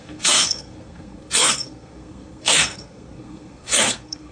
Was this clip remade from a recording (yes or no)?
yes